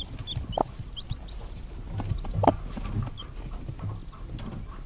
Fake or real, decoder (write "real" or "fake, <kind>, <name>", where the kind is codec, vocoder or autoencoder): real